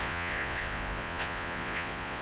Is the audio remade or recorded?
remade